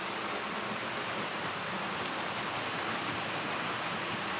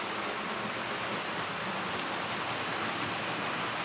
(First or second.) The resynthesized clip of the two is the first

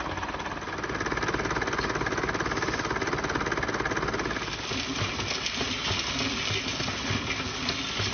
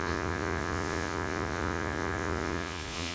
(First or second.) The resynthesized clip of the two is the second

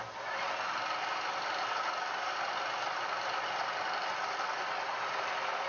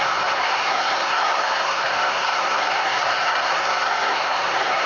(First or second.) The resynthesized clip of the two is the second